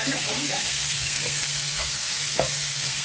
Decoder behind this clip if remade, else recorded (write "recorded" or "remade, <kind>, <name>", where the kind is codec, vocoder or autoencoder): remade, codec, SNAC